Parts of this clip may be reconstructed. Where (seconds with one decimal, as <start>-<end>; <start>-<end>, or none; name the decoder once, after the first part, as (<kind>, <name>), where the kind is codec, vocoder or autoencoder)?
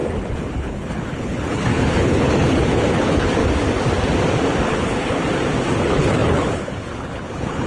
0.0-3.4 (codec, HILCodec); 4.5-5.2; 5.7-7.7